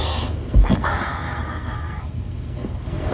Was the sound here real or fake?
fake